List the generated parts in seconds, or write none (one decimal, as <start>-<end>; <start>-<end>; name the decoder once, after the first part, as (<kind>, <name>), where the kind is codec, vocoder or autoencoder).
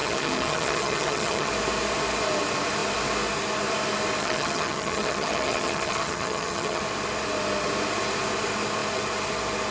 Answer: 0.0-1.5 (vocoder, HiFi-GAN); 4.2-6.8